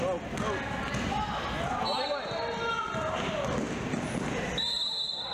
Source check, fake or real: real